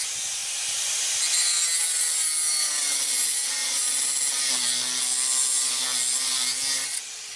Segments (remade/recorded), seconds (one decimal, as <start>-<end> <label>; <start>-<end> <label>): 0.0-7.4 recorded